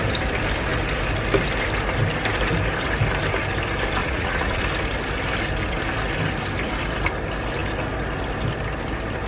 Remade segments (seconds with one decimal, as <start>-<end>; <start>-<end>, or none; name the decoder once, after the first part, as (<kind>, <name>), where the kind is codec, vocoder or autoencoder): 4.0-4.6 (vocoder, Vocos)